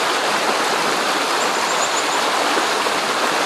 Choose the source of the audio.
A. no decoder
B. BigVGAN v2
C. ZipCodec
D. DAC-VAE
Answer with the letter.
A